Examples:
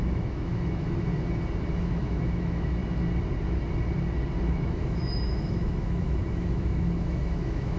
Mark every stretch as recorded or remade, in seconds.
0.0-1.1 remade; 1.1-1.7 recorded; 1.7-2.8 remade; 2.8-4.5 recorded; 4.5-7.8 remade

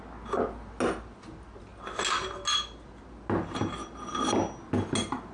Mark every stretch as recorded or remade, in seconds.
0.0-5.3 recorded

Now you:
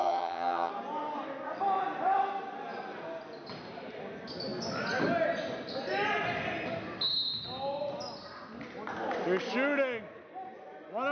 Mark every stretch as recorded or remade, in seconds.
0.0-0.7 remade; 0.7-11.1 recorded

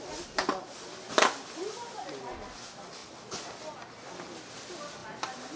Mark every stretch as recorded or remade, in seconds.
0.0-5.6 recorded

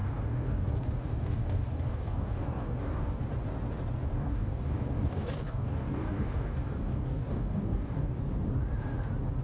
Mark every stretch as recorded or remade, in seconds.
0.0-3.2 remade; 3.2-4.1 recorded; 4.1-8.2 remade; 8.2-9.4 recorded

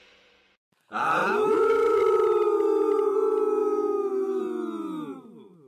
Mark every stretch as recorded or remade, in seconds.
0.0-1.2 recorded; 1.2-2.0 remade; 2.0-3.6 recorded; 3.6-4.4 remade; 4.4-5.7 recorded